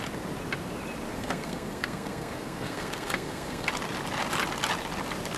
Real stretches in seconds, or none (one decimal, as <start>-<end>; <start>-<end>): 0.0-1.1; 3.7-5.4